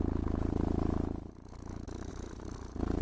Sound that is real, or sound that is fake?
real